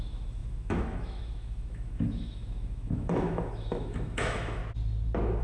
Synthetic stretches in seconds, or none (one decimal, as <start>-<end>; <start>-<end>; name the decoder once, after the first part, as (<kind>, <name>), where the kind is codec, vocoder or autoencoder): 0.0-4.6 (autoencoder, DAC-VAE)